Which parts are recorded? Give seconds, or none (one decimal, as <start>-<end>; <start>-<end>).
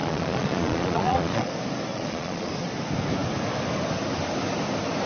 1.5-1.9; 2.5-5.1